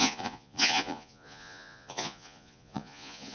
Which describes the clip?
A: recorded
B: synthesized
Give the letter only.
B